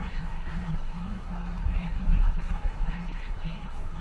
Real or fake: fake